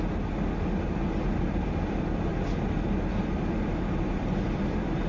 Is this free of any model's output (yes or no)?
yes